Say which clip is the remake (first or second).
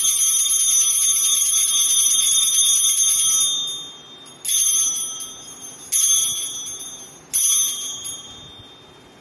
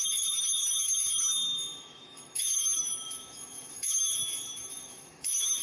second